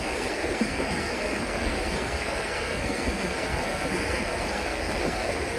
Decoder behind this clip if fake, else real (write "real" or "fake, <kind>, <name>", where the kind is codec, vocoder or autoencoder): fake, codec, SNAC